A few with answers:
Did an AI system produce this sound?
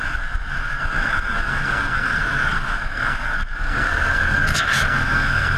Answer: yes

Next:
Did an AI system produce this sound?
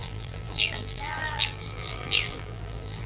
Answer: yes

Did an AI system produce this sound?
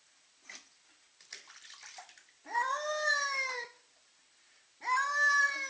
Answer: no